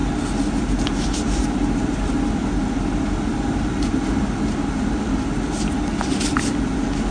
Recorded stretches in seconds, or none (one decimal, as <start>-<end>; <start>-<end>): 0.0-7.1